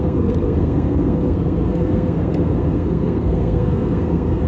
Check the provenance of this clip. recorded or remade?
remade